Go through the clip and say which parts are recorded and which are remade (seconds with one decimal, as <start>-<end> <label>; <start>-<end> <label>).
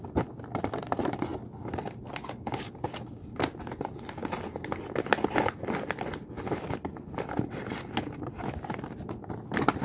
0.0-9.8 recorded